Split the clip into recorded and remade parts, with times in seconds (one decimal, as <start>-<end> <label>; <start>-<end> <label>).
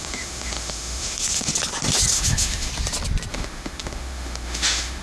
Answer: 0.0-1.5 remade; 1.5-2.1 recorded; 2.1-2.7 remade; 2.7-3.3 recorded; 3.3-5.0 remade